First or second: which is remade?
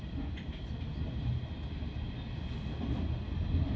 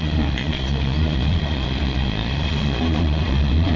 second